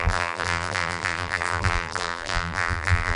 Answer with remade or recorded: remade